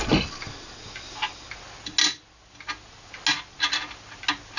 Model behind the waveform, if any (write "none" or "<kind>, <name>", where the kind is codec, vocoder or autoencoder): none